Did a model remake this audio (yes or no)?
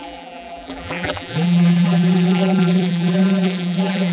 yes